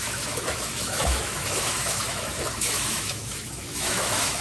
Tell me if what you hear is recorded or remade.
remade